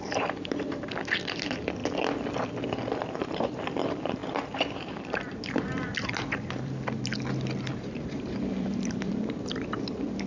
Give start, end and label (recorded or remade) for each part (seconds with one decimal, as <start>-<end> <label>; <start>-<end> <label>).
0.0-1.8 remade; 1.8-3.2 recorded; 3.2-7.1 remade; 7.1-7.7 recorded; 7.7-10.3 remade